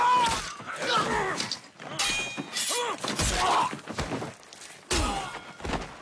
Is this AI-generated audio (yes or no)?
no